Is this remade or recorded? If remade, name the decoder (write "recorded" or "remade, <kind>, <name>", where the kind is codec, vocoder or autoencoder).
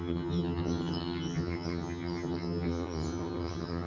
remade, vocoder, HiFi-GAN